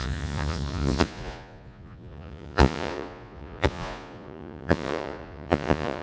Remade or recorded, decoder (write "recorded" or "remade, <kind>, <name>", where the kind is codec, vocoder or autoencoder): remade, vocoder, Vocos